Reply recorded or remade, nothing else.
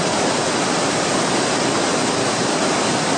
recorded